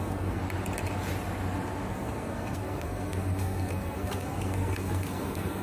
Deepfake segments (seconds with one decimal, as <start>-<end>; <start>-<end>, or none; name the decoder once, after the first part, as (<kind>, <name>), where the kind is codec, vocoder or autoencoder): 0.0-0.4 (codec, SNAC); 1.9-5.6